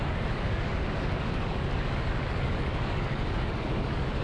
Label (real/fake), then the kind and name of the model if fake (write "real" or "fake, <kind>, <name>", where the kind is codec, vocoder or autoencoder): fake, codec, DAC